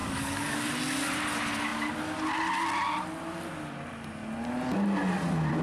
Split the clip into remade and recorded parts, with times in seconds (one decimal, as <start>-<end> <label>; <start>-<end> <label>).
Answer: 0.0-0.7 remade; 0.7-5.6 recorded